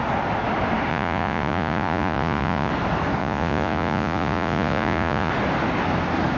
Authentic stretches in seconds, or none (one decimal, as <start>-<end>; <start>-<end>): 0.0-0.9; 2.7-3.2; 5.3-6.4